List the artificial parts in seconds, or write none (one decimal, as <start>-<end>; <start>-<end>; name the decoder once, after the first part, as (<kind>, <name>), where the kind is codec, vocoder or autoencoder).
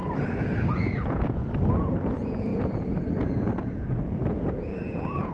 0.7-1.4 (vocoder, Vocos); 2.0-5.3